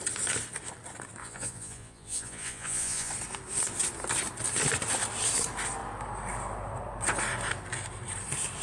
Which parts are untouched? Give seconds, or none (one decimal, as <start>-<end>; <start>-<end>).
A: 0.0-1.2; 3.1-8.6